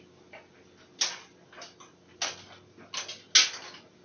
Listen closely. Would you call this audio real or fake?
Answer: real